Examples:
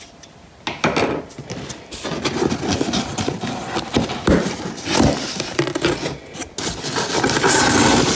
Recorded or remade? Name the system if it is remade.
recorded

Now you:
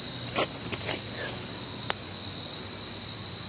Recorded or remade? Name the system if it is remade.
recorded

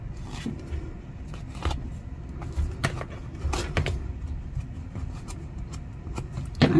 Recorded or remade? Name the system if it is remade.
recorded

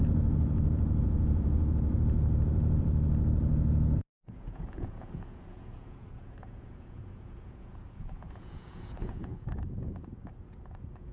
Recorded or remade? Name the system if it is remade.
remade, vocoder, Vocos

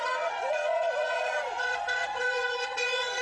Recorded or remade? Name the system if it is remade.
remade, vocoder, Vocos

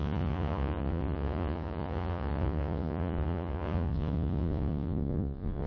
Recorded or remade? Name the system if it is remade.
remade, vocoder, Vocos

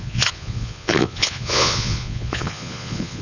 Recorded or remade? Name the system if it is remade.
remade, vocoder, Vocos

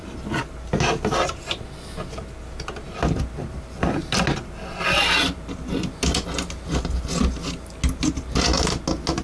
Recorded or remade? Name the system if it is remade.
recorded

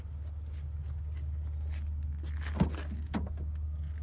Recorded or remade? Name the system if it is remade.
recorded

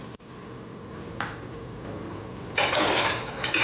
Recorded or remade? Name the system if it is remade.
recorded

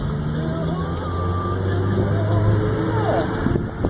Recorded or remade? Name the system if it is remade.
recorded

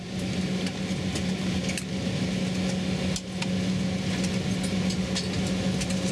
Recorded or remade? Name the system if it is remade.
recorded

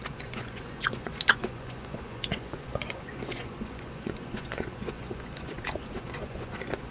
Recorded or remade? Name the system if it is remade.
remade, vocoder, Vocos